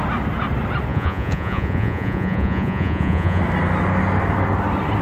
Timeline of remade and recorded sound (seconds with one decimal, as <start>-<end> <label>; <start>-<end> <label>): 0.0-0.9 recorded; 0.9-3.4 remade; 3.4-5.0 recorded